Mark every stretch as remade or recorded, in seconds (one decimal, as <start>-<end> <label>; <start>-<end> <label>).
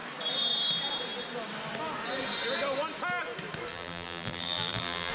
0.0-3.7 recorded; 3.7-5.1 remade